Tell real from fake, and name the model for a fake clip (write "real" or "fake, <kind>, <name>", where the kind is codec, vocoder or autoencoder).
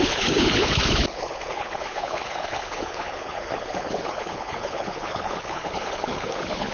fake, codec, HILCodec